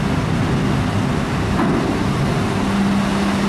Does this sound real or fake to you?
real